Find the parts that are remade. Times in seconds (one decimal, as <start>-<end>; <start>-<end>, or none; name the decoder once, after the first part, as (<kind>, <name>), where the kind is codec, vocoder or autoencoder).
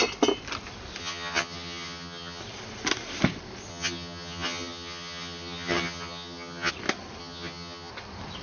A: 1.0-2.4 (vocoder, HiFi-GAN); 3.7-6.7; 7.2-7.9